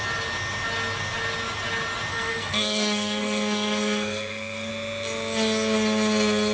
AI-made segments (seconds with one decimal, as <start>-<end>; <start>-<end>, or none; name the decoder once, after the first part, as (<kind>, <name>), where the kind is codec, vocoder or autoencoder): 2.1-4.7 (codec, SNAC)

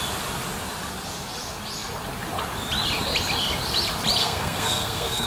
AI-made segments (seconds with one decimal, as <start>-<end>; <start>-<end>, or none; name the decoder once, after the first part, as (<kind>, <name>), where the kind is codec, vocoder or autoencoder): 4.2-5.3 (codec, SNAC)

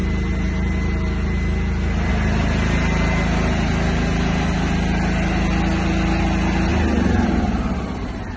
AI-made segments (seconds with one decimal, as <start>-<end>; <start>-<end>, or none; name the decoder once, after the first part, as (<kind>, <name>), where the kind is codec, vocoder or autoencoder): none

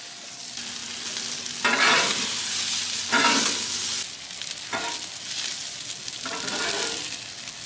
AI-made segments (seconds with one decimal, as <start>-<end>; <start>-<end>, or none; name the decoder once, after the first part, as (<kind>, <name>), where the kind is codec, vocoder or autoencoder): none